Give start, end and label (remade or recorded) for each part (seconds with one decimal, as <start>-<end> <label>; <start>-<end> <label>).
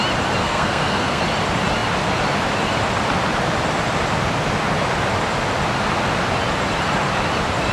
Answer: 0.0-0.4 recorded; 0.4-1.2 remade; 1.2-7.7 recorded